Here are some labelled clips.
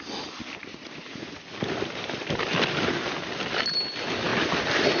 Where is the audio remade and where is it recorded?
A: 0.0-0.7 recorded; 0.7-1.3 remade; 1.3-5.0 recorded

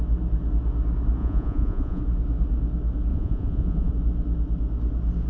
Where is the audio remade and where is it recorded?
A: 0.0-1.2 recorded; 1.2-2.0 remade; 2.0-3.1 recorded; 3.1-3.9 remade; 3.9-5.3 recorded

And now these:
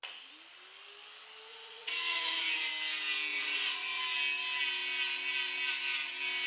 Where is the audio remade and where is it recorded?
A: 0.0-1.5 recorded; 1.5-2.7 remade; 2.7-3.3 recorded; 3.3-4.0 remade; 4.0-6.5 recorded

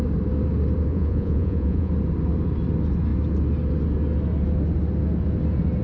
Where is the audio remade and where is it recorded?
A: 0.0-0.9 recorded; 0.9-1.9 remade; 1.9-5.8 recorded

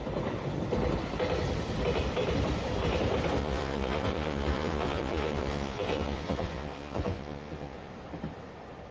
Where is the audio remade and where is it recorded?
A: 0.0-3.4 recorded; 3.4-7.9 remade; 7.9-8.9 recorded

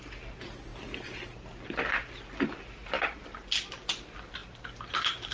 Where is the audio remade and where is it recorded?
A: 0.0-5.3 recorded